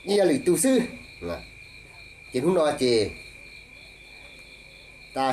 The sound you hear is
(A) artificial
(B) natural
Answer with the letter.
B